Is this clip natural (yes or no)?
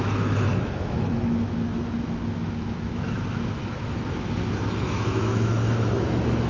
no